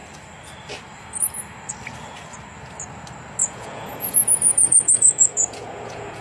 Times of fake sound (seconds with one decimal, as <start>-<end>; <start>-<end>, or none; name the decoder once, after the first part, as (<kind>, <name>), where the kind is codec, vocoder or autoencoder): 3.4-6.2 (vocoder, Vocos)

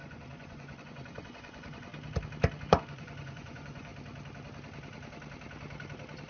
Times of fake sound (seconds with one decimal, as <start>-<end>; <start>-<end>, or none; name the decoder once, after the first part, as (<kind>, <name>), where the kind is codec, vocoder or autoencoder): 0.0-1.9 (vocoder, Vocos); 2.7-3.9

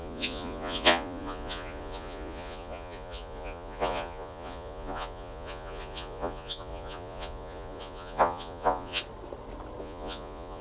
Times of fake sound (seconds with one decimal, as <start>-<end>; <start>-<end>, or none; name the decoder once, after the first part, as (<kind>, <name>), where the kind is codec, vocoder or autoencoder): 0.0-9.0 (vocoder, Vocos); 9.8-10.6

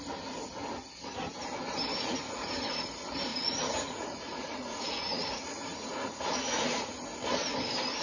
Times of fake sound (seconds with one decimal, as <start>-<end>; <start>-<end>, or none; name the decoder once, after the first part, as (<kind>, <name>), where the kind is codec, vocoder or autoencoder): 1.9-2.7 (vocoder, Vocos); 3.3-6.9

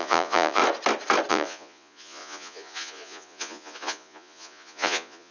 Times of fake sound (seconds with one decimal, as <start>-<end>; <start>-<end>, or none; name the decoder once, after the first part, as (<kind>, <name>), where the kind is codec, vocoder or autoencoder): 0.0-0.6 (vocoder, Vocos); 1.3-5.3

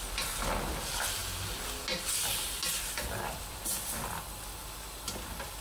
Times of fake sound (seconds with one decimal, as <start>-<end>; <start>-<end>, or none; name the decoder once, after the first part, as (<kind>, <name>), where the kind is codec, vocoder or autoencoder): none